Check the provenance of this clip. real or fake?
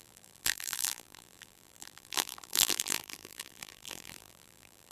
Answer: fake